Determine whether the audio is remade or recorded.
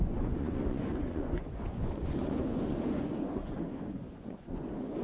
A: remade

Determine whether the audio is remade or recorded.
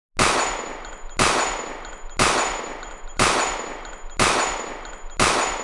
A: recorded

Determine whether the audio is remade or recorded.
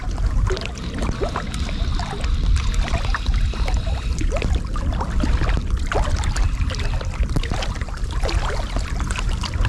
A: recorded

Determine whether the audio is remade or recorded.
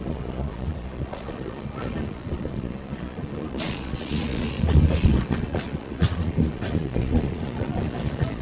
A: remade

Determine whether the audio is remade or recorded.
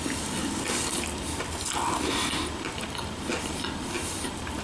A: recorded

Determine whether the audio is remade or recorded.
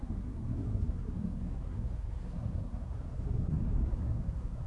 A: remade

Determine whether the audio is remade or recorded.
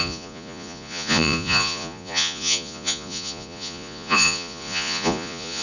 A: remade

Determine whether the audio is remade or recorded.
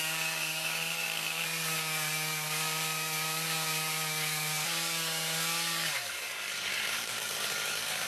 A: remade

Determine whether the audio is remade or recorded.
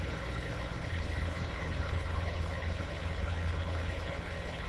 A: remade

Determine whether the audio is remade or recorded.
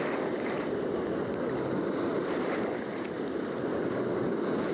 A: recorded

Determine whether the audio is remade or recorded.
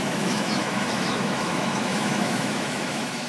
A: remade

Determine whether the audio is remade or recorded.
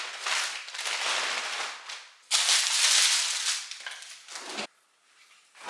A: recorded